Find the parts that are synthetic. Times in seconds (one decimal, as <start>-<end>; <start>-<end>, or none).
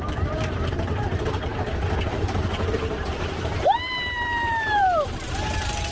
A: 0.0-1.5; 2.1-5.9